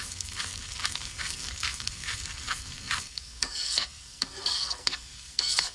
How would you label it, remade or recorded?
remade